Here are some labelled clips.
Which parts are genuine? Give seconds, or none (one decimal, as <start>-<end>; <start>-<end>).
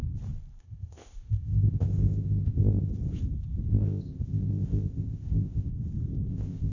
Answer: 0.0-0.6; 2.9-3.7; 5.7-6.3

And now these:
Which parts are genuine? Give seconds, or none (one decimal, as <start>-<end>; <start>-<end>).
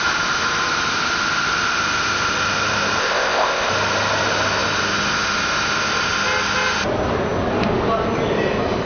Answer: 0.0-3.0; 3.7-8.9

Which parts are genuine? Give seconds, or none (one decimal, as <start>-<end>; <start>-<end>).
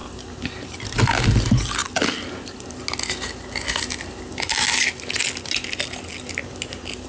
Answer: 0.0-7.1